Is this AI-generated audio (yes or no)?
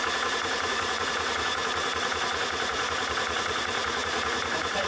yes